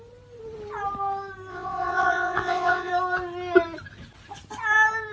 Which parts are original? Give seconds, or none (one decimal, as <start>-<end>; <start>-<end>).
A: 0.0-1.5; 2.9-5.1